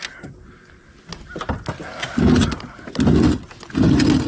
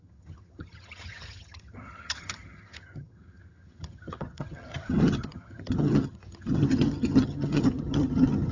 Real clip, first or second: first